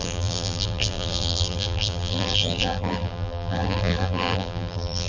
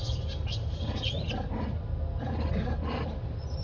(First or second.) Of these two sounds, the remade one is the first